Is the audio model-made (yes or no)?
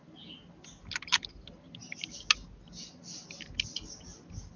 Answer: no